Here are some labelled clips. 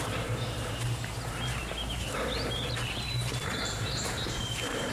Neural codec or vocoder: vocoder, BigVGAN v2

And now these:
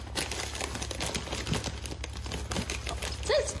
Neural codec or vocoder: none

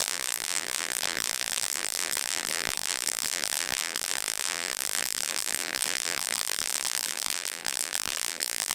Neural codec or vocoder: vocoder, BigVGAN v2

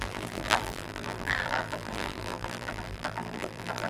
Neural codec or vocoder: vocoder, BigVGAN v2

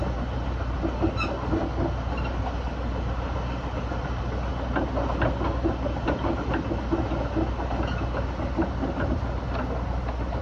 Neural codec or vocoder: none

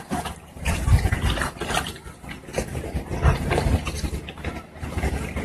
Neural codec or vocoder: vocoder, BigVGAN v2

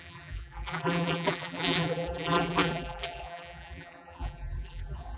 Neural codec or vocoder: vocoder, BigVGAN v2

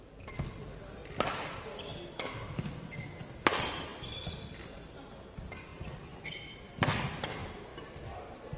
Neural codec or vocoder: none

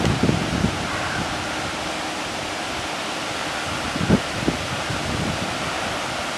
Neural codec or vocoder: none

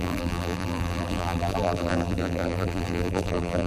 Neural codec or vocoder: vocoder, BigVGAN v2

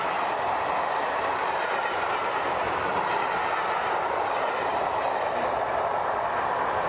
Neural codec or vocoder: none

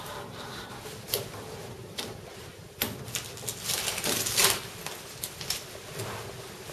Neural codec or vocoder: none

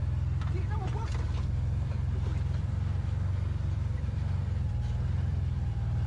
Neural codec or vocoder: vocoder, BigVGAN v2